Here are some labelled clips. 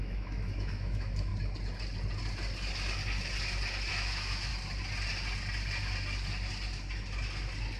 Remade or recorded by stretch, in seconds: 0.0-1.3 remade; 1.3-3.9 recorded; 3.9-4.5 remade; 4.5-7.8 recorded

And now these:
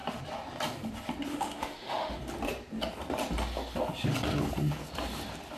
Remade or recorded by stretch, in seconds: 0.0-1.3 recorded; 1.3-2.2 remade; 2.2-5.6 recorded

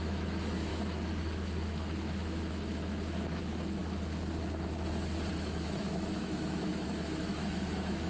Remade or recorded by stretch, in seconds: 0.0-3.8 remade; 3.8-5.3 recorded; 5.3-8.1 remade

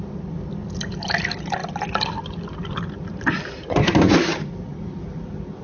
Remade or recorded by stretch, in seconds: 0.0-5.6 recorded

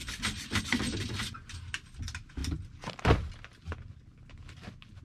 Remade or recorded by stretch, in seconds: 0.0-5.0 recorded